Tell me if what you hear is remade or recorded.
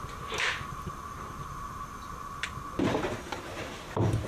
recorded